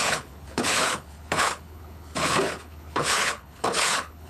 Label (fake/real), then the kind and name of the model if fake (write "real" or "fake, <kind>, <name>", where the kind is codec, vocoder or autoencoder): fake, codec, HILCodec